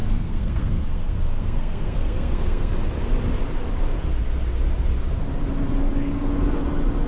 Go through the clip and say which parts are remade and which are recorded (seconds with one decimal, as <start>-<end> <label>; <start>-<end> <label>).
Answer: 0.0-2.7 remade; 2.7-7.1 recorded